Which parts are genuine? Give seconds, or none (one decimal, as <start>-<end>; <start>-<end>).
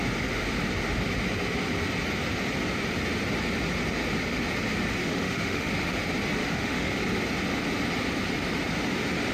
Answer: 0.0-5.0; 5.7-6.4; 7.0-9.3